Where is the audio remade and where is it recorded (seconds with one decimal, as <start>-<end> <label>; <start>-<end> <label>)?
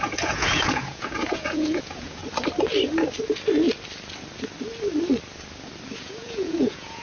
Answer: 0.0-2.2 remade; 2.2-6.0 recorded; 6.0-7.0 remade